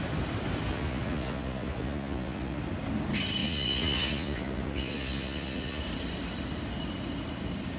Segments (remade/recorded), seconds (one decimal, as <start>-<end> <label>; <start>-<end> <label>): 0.0-0.7 recorded; 0.7-2.6 remade; 2.6-3.4 recorded; 3.4-5.8 remade; 5.8-7.8 recorded